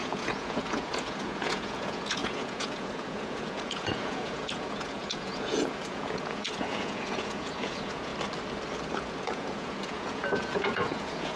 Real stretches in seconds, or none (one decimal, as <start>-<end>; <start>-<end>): 8.1-8.9